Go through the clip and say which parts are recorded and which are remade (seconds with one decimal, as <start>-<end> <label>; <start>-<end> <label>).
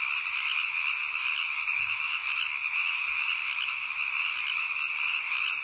0.0-5.6 recorded